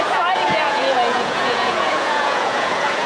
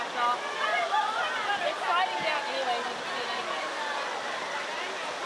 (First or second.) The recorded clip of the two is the second